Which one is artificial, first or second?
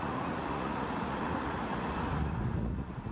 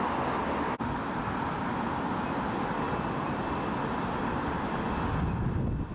first